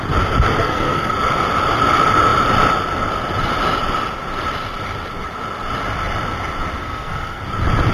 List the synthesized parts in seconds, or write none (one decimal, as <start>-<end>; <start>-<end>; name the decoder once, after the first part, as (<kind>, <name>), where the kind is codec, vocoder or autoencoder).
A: 0.6-1.1 (codec, SNAC); 6.8-7.4

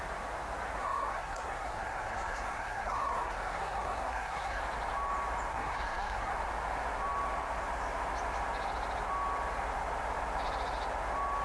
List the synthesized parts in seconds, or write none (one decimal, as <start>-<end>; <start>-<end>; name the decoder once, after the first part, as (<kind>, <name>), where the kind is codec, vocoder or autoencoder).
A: 0.8-4.6 (codec, SNAC); 5.5-6.3

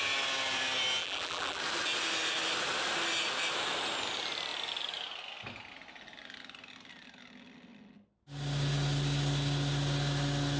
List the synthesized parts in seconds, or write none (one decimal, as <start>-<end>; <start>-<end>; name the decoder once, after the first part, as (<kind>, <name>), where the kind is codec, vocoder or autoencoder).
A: 1.0-1.6 (vocoder, BigVGAN v2)

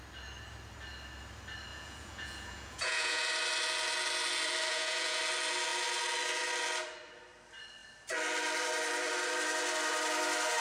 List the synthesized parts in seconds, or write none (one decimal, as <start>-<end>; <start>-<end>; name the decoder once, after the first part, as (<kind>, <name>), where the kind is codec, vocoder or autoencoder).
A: 1.7-3.2 (vocoder, Vocos); 4.7-5.2

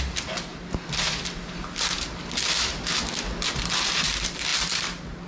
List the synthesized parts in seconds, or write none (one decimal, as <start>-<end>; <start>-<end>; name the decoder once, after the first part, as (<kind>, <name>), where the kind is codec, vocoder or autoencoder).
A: none

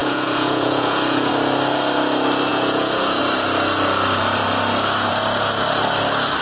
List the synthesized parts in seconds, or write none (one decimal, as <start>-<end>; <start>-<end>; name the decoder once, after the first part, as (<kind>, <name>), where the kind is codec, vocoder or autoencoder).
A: 0.0-1.3 (vocoder, Vocos); 2.5-3.2

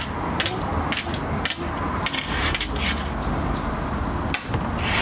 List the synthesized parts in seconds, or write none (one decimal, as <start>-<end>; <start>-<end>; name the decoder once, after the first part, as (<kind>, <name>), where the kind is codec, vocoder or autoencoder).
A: none